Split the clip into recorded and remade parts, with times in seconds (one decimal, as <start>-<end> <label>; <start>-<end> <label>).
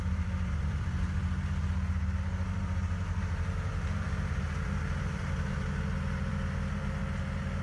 0.0-1.2 remade; 1.2-3.2 recorded; 3.2-7.0 remade; 7.0-7.6 recorded